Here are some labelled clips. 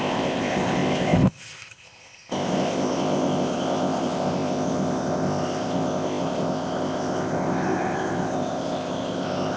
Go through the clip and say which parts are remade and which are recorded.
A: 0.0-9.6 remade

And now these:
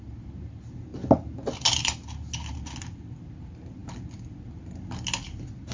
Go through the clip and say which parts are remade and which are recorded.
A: 0.0-5.7 recorded

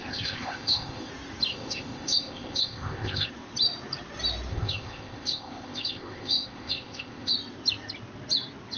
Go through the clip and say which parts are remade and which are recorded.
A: 0.0-1.1 remade; 1.1-1.5 recorded; 1.5-3.3 remade; 3.3-4.5 recorded; 4.5-7.3 remade; 7.3-8.8 recorded

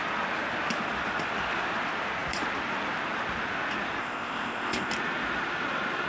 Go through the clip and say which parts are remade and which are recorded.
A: 0.0-4.0 recorded; 4.0-4.9 remade; 4.9-6.1 recorded